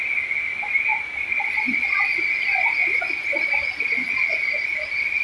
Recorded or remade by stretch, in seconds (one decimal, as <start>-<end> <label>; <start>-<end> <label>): 0.0-5.2 recorded